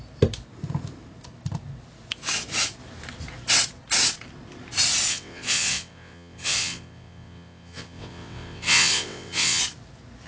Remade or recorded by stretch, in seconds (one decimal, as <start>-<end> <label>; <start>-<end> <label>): 0.0-5.1 recorded; 5.1-9.6 remade; 9.6-10.3 recorded